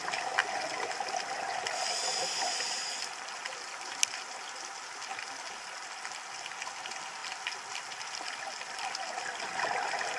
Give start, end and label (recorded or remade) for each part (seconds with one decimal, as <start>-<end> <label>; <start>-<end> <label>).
0.0-10.2 recorded